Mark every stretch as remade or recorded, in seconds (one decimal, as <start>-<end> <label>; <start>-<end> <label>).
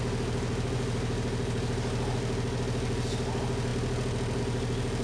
0.0-5.0 recorded